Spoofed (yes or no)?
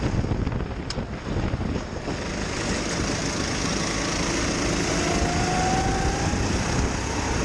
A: no